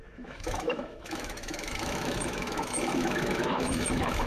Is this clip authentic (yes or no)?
no